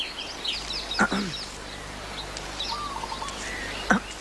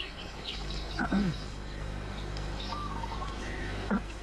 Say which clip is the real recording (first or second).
first